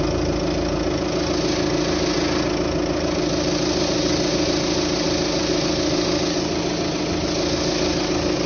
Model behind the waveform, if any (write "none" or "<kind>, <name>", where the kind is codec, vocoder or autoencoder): none